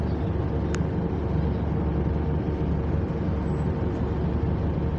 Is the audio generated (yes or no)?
no